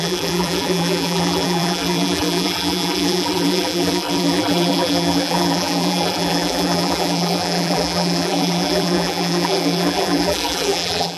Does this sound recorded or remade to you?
remade